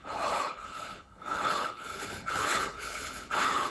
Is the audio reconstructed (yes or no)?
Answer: yes